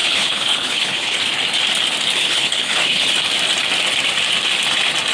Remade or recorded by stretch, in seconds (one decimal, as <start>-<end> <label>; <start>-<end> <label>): 0.0-1.2 remade; 1.2-2.2 recorded; 2.2-3.1 remade; 3.1-5.1 recorded